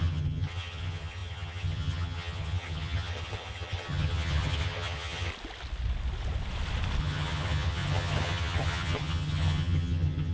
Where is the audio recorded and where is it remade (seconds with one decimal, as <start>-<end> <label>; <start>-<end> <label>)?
0.0-5.3 remade; 5.3-7.0 recorded; 7.0-10.3 remade